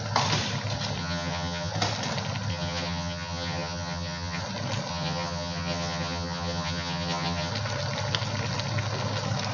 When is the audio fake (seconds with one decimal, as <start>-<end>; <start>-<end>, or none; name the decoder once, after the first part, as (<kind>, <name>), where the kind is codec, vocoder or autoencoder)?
1.0-1.7 (vocoder, HiFi-GAN); 2.5-4.4; 4.9-7.5